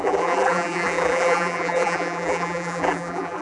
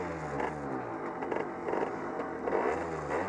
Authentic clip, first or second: second